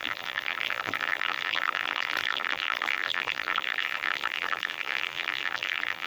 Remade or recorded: remade